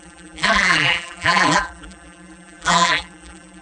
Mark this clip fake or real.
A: fake